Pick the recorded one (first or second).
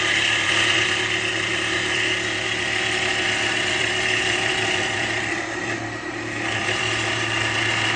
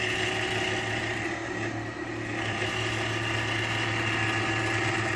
second